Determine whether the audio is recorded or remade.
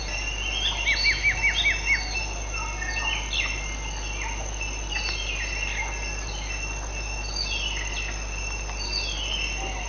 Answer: recorded